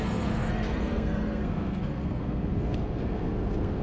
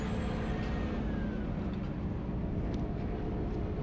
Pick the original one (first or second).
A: second